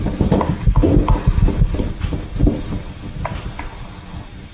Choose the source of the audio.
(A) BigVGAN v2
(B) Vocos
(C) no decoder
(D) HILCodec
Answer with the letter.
C